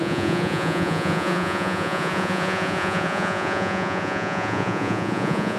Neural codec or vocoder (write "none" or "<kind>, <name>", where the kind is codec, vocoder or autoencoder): vocoder, Vocos